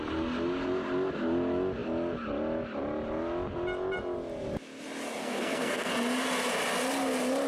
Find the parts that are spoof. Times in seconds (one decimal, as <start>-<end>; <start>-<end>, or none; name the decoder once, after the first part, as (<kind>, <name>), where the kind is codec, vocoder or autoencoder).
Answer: 5.2-5.9 (codec, SNAC)

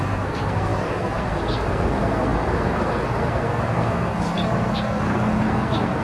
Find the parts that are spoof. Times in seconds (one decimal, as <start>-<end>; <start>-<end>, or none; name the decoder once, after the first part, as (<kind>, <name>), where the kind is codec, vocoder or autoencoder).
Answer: 0.0-6.0 (codec, SNAC)

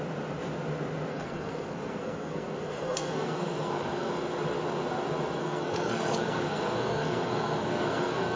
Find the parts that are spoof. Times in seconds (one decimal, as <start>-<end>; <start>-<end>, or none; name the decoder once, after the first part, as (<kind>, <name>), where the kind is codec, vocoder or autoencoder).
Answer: 1.1-4.1 (codec, SNAC); 5.4-8.4